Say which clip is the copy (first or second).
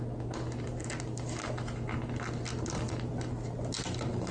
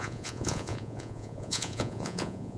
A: second